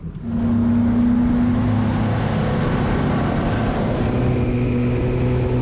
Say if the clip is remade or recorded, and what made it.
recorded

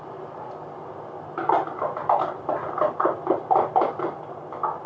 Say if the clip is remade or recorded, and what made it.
recorded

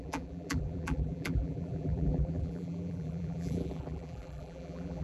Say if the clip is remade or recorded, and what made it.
remade, vocoder, BigVGAN v2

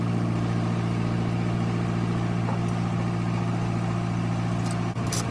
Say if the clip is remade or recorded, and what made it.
recorded